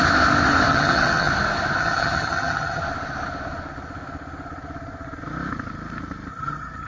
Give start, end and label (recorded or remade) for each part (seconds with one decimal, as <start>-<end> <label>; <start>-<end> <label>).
0.0-0.7 recorded; 0.7-1.3 remade; 1.3-1.8 recorded; 1.8-2.8 remade; 2.8-6.3 recorded; 6.3-6.9 remade